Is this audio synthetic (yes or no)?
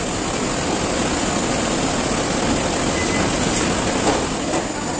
no